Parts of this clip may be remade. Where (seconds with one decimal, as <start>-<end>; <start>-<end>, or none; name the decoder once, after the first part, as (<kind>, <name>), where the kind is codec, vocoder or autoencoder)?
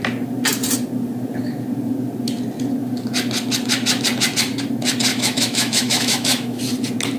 5.1-6.6 (autoencoder, DAC-VAE)